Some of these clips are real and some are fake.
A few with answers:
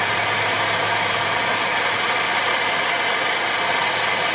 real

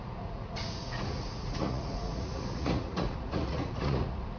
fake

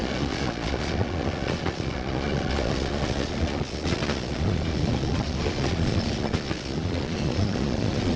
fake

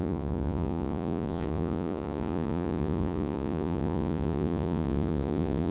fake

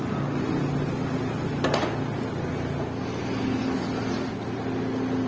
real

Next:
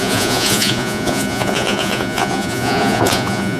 fake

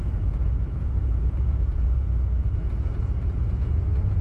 fake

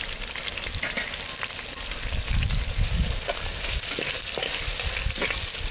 real